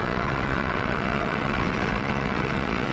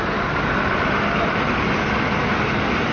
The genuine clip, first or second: second